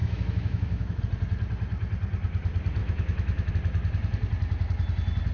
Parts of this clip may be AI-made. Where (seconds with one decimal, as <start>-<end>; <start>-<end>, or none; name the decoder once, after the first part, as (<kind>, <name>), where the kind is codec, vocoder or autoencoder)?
0.0-1.0 (autoencoder, DAC-VAE); 2.8-3.5

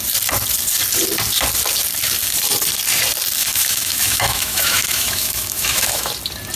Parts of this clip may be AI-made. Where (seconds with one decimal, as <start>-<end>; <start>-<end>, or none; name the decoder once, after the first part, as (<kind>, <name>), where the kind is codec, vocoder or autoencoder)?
3.4-6.1 (autoencoder, DAC-VAE)

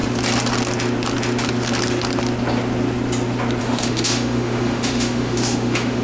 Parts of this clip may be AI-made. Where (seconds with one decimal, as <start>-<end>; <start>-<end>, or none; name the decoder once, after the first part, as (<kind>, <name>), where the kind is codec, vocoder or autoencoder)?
3.6-6.0 (autoencoder, DAC-VAE)